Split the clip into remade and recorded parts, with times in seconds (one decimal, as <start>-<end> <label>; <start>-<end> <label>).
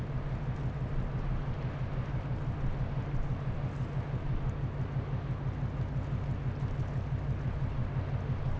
0.0-8.6 recorded